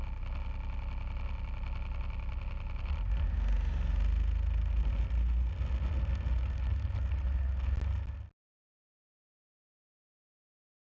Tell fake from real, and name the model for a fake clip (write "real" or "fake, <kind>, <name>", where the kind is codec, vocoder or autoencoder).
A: real